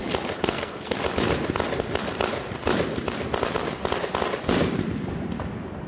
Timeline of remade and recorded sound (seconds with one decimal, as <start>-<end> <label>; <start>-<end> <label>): 0.0-0.4 recorded; 0.4-1.0 remade; 1.0-5.9 recorded